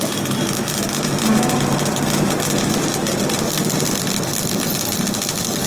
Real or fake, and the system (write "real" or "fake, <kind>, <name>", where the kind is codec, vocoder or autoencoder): real